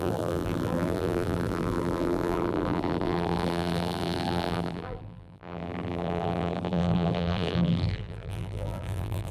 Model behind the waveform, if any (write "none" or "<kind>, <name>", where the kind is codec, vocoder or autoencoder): vocoder, BigVGAN v2